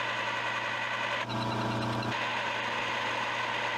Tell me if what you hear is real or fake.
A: real